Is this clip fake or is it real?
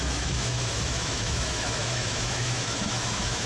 fake